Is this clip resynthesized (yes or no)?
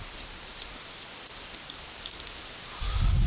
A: no